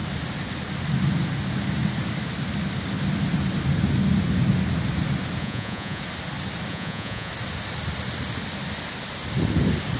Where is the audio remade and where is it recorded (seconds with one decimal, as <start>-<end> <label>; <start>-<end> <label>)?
0.0-5.4 recorded; 5.4-6.0 remade; 6.0-6.7 recorded; 6.7-7.3 remade; 7.3-10.0 recorded